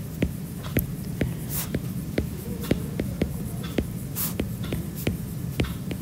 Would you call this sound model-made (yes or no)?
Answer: yes